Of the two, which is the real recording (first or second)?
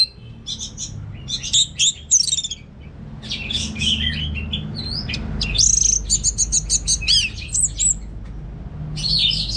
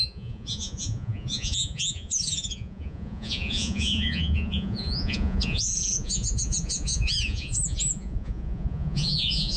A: first